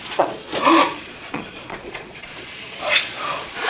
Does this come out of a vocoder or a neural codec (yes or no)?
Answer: yes